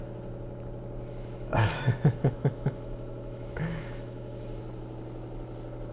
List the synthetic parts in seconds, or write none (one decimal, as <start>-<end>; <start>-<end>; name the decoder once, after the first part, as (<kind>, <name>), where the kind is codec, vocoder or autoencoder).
1.1-4.6 (autoencoder, DAC-VAE)